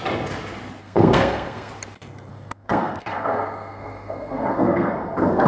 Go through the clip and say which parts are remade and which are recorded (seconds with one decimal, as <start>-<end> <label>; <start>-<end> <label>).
0.0-0.8 recorded; 0.8-1.7 remade; 1.7-2.3 recorded; 2.3-5.5 remade